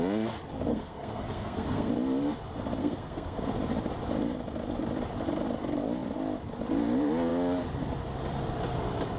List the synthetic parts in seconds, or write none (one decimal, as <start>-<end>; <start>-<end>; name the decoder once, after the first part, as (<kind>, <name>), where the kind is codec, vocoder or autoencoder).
0.7-1.9 (codec, SNAC); 2.8-3.4